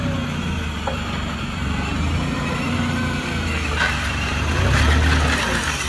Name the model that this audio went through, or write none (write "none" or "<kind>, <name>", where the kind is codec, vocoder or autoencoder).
none